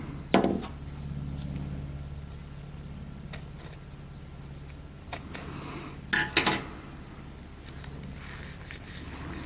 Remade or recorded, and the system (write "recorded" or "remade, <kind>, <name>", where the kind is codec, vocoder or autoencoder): recorded